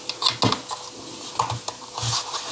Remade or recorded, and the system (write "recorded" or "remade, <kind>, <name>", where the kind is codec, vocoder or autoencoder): recorded